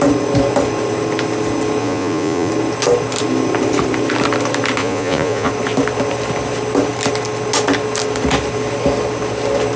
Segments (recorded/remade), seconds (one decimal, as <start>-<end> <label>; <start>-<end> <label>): 0.0-1.8 recorded; 1.8-2.5 remade; 2.5-4.8 recorded; 4.8-5.5 remade; 5.5-9.8 recorded

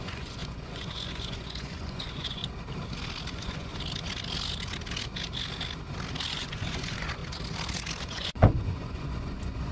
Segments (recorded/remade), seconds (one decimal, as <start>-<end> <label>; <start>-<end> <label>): 0.0-2.4 remade; 2.4-3.3 recorded; 3.3-3.7 remade; 3.7-6.3 recorded; 6.3-7.2 remade; 7.2-8.0 recorded; 8.0-9.7 remade

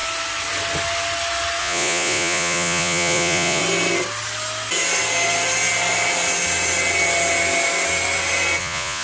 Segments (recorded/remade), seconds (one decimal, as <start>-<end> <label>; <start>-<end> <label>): 0.0-1.6 recorded; 1.6-3.6 remade; 3.6-8.6 recorded; 8.6-9.0 remade

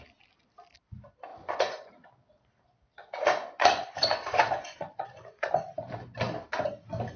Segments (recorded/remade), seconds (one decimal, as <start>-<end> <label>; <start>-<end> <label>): 0.0-1.3 recorded; 1.3-1.9 remade; 1.9-3.0 recorded; 3.0-5.5 remade; 5.5-7.2 recorded

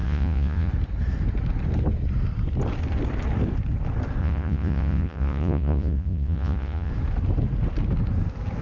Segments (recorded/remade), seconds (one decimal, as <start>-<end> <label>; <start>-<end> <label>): 0.0-0.7 remade; 0.7-4.2 recorded; 4.2-6.9 remade; 6.9-8.6 recorded

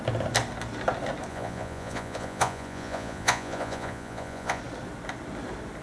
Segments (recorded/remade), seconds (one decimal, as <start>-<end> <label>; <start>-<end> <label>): 0.0-1.3 recorded; 1.3-4.6 remade; 4.6-5.8 recorded

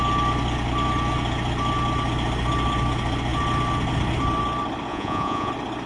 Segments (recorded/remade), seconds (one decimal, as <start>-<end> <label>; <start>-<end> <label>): 0.0-4.9 recorded; 4.9-5.5 remade; 5.5-5.9 recorded